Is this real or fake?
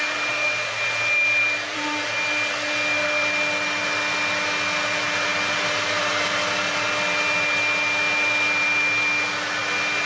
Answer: real